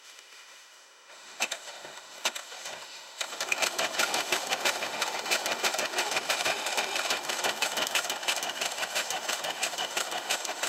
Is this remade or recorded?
remade